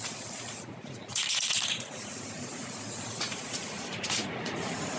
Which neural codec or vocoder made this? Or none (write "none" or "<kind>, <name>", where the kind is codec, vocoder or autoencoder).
vocoder, Vocos